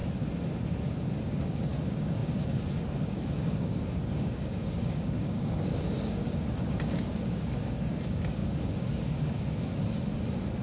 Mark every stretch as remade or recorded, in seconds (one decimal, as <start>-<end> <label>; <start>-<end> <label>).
0.0-1.2 recorded; 1.2-9.7 remade; 9.7-10.6 recorded